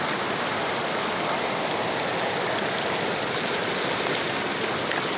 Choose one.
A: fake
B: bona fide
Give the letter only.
B